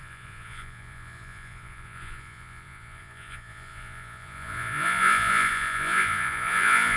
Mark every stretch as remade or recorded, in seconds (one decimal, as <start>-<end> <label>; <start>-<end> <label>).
0.0-7.0 remade